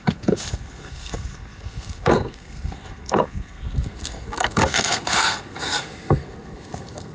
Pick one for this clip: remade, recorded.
remade